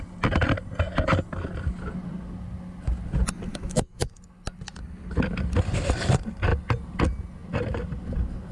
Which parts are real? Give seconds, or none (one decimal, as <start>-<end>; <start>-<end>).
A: 0.0-3.5; 4.1-8.5